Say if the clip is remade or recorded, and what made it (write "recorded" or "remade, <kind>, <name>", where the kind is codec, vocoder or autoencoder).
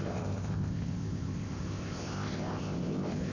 remade, codec, ZipCodec